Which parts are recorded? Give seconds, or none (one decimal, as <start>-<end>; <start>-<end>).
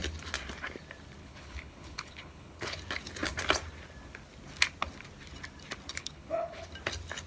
0.0-1.2; 2.8-6.0; 6.7-7.3